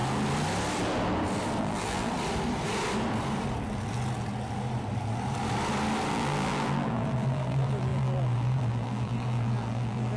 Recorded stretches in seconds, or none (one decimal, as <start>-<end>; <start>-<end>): 0.0-1.6; 2.1-6.1